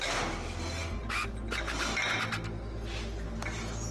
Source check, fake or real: real